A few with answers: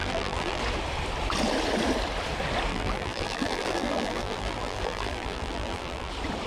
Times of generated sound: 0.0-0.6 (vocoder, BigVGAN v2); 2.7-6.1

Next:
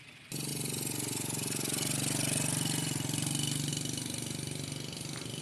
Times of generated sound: none

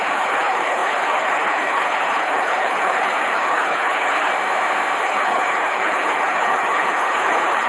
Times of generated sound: 0.0-4.3 (codec, HILCodec); 5.0-7.7

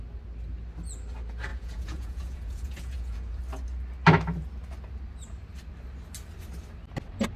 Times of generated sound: 1.5-3.4 (vocoder, Vocos)

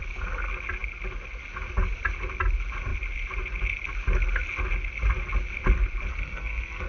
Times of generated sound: 6.1-6.9 (codec, SNAC)